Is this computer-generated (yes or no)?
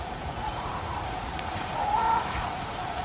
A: yes